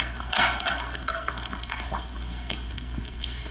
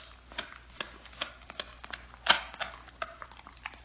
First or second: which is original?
second